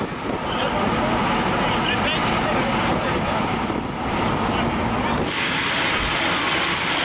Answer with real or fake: real